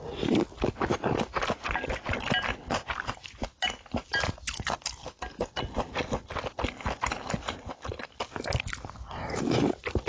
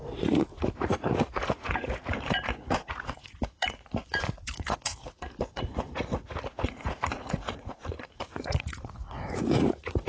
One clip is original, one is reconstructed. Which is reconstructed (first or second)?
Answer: second